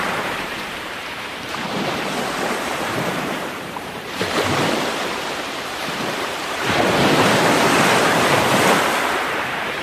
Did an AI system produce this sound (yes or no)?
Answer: yes